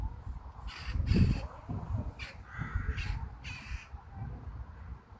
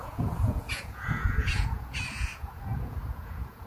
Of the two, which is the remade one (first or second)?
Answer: second